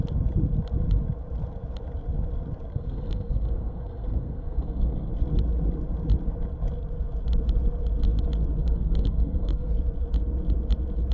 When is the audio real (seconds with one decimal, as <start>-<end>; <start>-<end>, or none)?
0.0-2.7; 5.1-8.6; 9.7-11.1